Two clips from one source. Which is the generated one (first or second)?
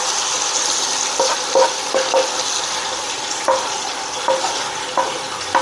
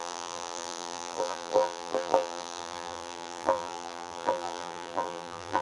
second